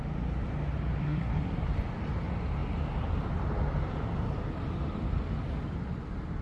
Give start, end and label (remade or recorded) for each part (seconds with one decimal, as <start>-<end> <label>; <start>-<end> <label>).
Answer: 0.0-1.0 recorded; 1.0-1.7 remade; 1.7-6.4 recorded